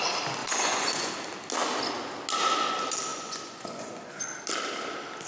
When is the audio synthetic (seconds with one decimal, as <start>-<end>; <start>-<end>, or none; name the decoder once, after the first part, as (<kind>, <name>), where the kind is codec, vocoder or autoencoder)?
0.4-1.1 (vocoder, Vocos); 3.1-4.3